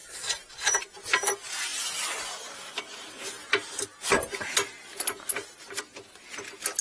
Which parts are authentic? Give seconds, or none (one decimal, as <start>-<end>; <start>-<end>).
0.5-5.3; 5.8-6.8